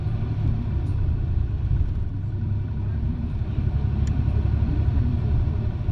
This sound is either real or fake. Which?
fake